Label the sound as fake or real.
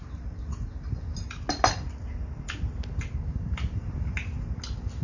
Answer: real